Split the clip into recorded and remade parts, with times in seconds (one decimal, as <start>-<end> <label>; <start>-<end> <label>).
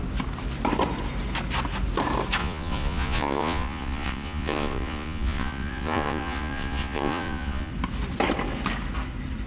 0.0-2.4 recorded; 2.4-7.7 remade; 7.7-9.5 recorded